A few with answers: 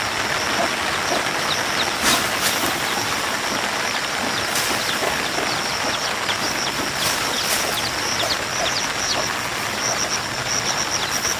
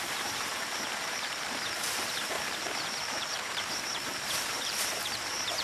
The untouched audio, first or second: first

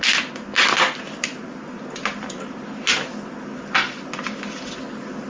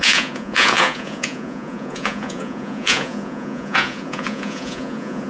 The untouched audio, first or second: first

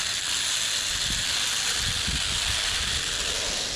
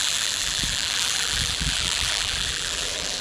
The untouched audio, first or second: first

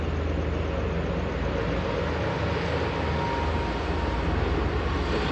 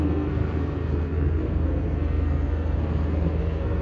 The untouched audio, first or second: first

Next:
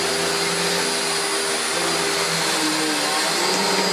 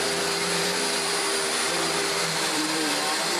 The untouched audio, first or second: first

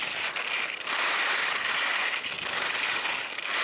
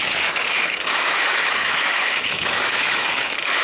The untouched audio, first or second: first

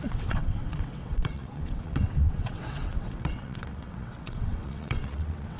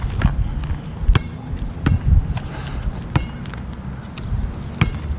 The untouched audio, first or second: second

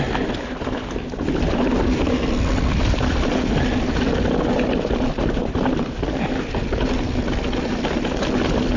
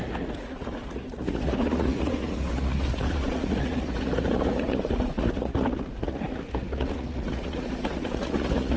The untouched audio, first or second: first